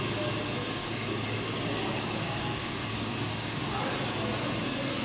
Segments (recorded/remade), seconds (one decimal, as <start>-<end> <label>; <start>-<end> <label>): 0.0-0.8 recorded; 0.8-3.8 remade; 3.8-5.0 recorded